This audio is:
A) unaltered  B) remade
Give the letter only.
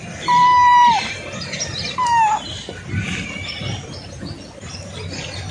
A